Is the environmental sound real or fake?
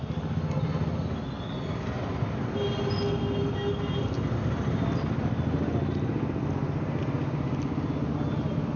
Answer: real